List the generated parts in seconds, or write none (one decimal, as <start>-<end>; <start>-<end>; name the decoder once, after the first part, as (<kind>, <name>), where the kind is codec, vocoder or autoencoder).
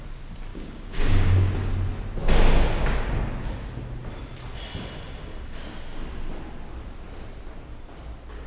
0.5-1.5 (codec, DAC)